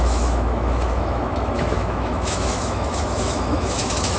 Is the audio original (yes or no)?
no